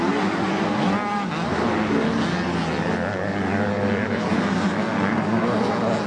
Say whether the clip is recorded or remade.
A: recorded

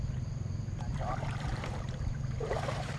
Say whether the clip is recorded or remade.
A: remade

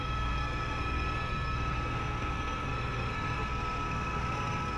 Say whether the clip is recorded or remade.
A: remade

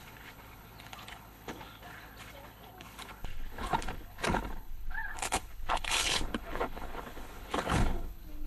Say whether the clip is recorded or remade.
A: remade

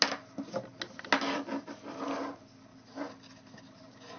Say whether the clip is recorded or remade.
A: recorded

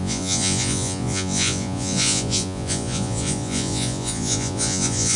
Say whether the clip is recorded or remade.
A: remade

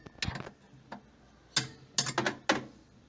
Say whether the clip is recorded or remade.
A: recorded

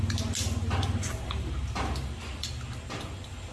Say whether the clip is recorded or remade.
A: recorded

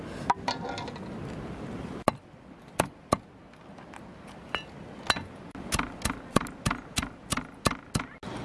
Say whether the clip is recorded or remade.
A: recorded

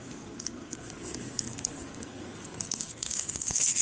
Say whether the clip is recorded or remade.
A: remade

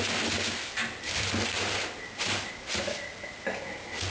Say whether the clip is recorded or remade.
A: recorded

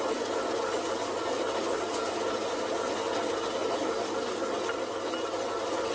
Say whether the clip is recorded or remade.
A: recorded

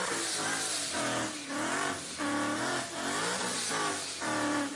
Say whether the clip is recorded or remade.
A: recorded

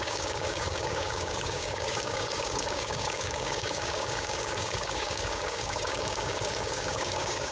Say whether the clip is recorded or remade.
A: remade